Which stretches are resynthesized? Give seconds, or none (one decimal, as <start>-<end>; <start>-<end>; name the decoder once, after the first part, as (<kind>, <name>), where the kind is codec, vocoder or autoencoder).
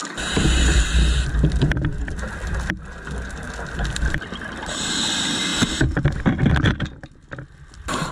none